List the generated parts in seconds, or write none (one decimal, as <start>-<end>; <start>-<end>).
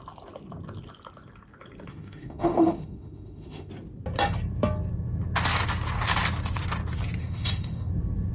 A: 1.9-3.7; 7.2-7.9